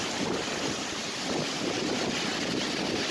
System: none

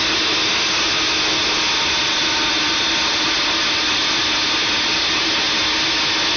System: none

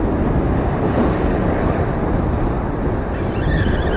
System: none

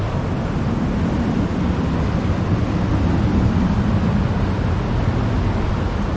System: none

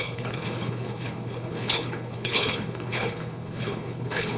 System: codec, HILCodec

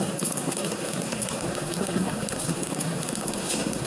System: codec, SNAC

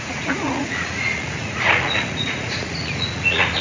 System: vocoder, Vocos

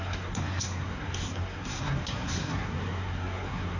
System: codec, SNAC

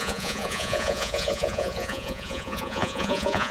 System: vocoder, Vocos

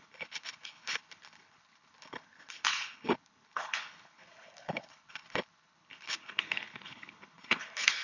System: codec, HILCodec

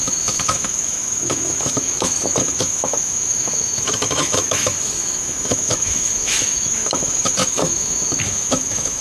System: autoencoder, DAC-VAE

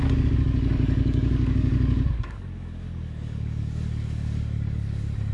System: codec, DAC